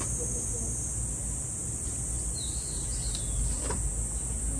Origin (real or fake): real